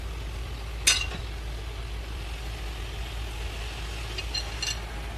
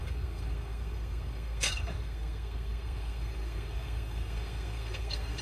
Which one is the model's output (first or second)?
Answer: second